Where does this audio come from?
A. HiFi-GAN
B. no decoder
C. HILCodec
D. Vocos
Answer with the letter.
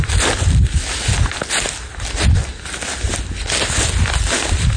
B